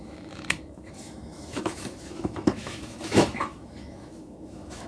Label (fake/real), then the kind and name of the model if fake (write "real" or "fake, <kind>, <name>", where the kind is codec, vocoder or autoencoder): fake, autoencoder, DAC-VAE